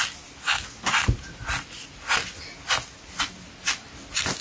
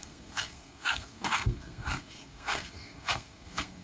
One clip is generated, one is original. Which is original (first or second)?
first